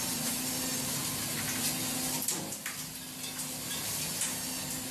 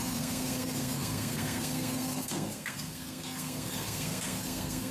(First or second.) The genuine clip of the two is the first